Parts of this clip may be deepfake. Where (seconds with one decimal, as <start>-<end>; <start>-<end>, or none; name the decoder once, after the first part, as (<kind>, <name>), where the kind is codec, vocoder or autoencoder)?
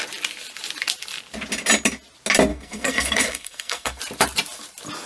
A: 2.5-4.0 (codec, SNAC)